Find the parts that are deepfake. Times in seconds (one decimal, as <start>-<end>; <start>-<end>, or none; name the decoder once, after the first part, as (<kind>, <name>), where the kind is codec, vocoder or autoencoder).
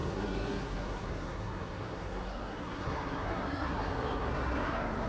0.0-5.1 (codec, SNAC)